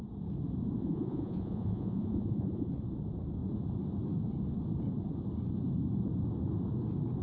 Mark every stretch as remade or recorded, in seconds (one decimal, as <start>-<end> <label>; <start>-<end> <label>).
0.0-0.8 recorded; 0.8-2.7 remade; 2.7-7.2 recorded

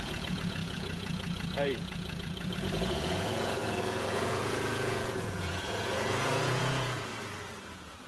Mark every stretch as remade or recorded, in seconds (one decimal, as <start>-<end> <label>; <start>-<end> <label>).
0.0-7.1 remade; 7.1-7.6 recorded; 7.6-8.1 remade

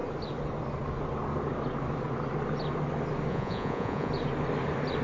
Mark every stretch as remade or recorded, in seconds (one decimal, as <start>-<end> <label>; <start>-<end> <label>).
0.0-3.3 recorded; 3.3-4.1 remade; 4.1-5.0 recorded